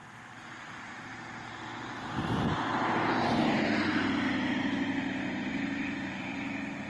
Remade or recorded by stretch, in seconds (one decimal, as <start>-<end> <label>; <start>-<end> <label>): 0.0-1.1 recorded; 1.1-4.5 remade; 4.5-6.9 recorded